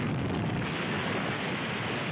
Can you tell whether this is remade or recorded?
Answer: recorded